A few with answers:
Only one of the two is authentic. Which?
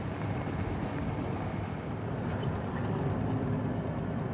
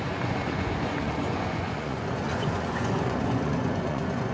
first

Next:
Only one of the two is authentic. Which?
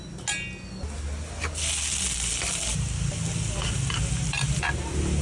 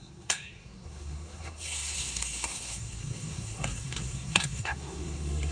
first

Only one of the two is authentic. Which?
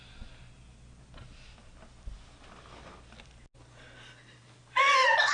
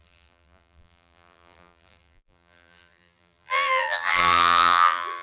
first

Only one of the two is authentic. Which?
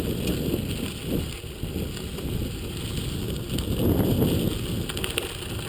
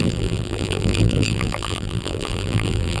first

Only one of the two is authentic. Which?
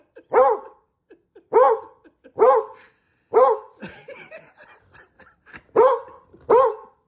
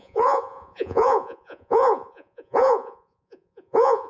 first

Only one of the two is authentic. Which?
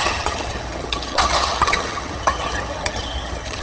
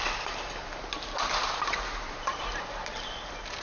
second